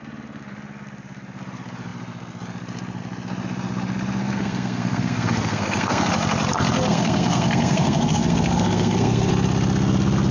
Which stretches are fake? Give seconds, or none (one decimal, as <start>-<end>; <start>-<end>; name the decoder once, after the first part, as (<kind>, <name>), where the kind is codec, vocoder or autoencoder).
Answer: 4.2-6.1 (codec, SNAC); 6.9-9.3